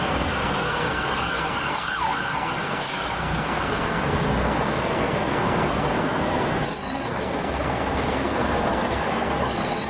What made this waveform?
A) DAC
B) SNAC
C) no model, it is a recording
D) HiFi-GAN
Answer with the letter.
B